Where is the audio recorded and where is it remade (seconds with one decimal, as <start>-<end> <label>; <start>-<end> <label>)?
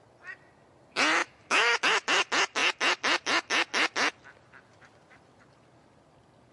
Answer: 0.0-1.2 recorded; 1.2-1.8 remade; 1.8-6.5 recorded